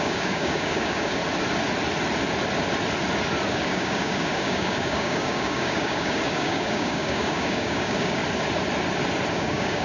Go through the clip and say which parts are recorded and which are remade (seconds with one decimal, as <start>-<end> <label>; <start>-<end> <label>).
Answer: 0.0-1.2 remade; 1.2-3.5 recorded; 3.5-8.2 remade; 8.2-9.3 recorded; 9.3-9.8 remade